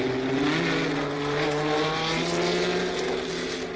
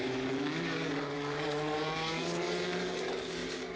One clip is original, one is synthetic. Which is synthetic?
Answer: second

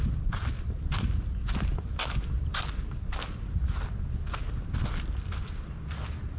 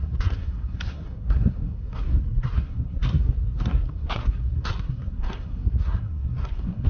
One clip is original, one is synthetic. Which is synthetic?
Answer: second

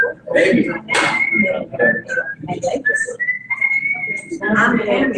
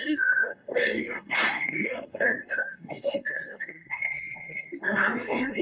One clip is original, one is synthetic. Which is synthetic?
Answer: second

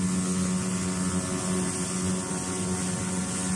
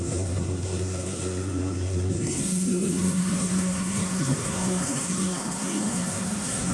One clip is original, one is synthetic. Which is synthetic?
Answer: second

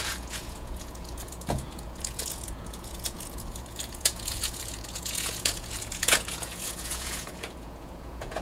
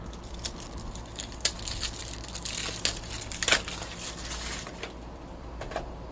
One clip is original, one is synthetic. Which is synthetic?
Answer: first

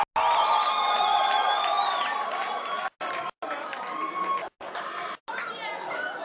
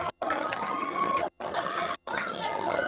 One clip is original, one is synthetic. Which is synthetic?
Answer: second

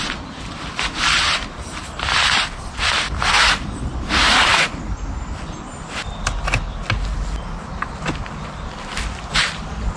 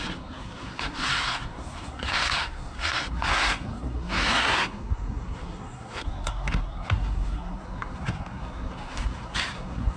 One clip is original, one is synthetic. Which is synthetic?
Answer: second